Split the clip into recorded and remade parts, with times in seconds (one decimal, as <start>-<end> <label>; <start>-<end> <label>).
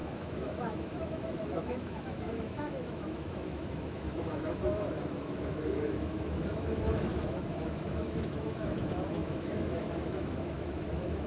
0.0-11.3 remade